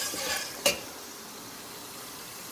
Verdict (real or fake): fake